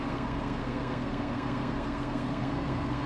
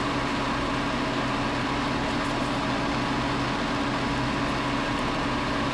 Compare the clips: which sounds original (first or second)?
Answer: second